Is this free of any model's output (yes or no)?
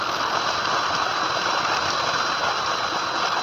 yes